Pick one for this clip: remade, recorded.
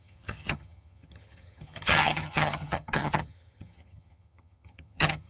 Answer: remade